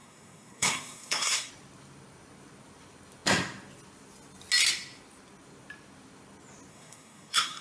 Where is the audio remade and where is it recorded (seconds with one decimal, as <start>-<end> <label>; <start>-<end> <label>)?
0.0-1.5 remade; 1.5-6.7 recorded; 6.7-7.6 remade